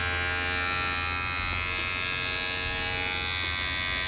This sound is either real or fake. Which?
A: real